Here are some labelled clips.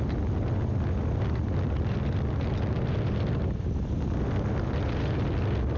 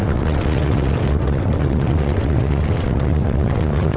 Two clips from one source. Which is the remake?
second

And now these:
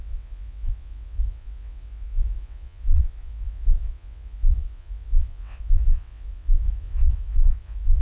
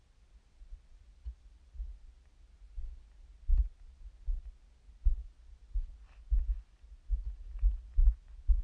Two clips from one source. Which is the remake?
first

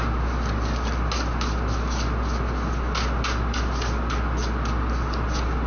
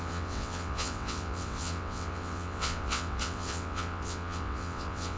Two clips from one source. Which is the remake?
second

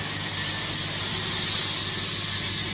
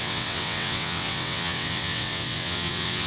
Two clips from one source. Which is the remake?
second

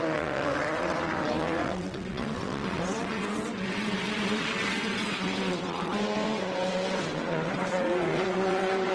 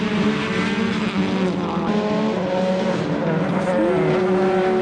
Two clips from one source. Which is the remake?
first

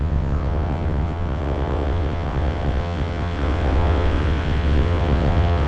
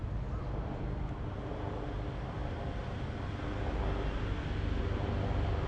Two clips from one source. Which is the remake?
first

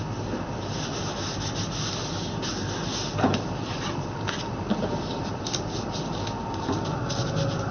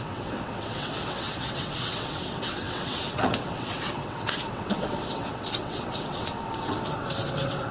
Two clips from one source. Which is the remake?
second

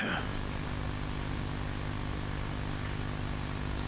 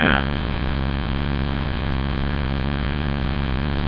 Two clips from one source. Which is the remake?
second